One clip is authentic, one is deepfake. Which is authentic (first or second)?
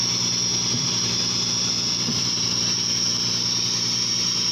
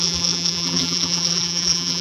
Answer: first